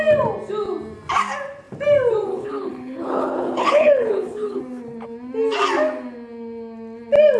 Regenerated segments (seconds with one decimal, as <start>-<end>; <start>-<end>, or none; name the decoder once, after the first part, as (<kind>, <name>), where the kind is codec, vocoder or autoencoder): 2.3-4.6 (codec, HILCodec)